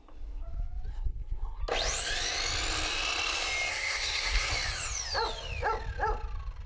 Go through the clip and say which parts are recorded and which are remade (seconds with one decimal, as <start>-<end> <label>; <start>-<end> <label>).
0.0-0.9 recorded; 0.9-1.6 remade; 1.6-3.7 recorded; 3.7-4.5 remade; 4.5-6.7 recorded